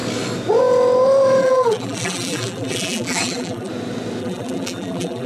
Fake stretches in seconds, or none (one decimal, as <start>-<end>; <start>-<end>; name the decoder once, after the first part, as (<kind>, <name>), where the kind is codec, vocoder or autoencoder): 1.4-3.7 (vocoder, BigVGAN v2); 4.2-5.3